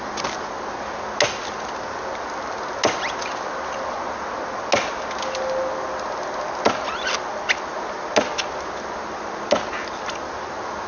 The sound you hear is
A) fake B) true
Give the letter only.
B